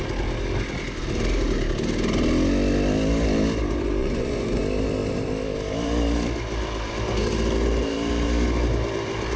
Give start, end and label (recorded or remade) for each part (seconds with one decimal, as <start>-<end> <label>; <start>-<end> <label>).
0.0-4.0 recorded; 4.0-4.6 remade; 4.6-9.4 recorded